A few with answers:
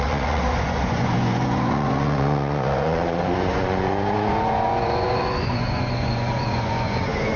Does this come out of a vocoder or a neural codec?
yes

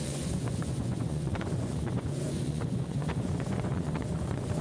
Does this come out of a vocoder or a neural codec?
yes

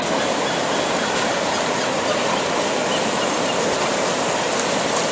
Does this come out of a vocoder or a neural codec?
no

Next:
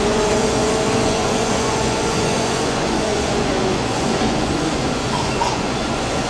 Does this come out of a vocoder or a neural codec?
yes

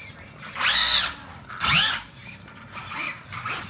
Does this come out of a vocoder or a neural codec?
no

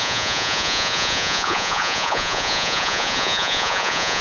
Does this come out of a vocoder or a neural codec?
yes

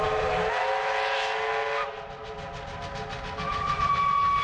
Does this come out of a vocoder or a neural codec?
no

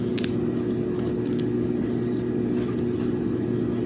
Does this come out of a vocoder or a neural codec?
no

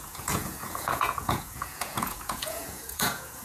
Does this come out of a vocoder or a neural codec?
yes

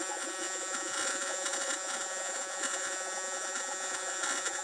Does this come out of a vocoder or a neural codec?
yes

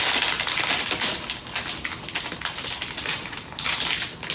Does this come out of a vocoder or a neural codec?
no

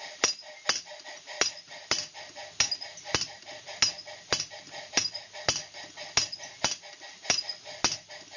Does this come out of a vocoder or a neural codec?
no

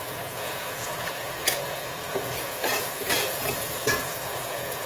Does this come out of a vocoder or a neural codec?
yes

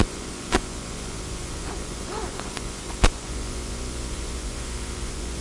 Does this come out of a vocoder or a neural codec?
yes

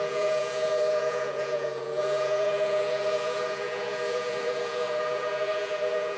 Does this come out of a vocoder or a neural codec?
yes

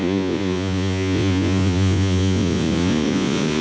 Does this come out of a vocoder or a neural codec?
yes